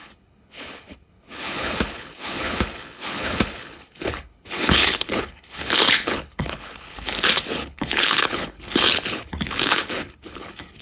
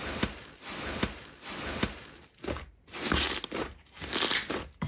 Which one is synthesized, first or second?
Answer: first